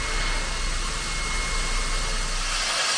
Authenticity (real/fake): real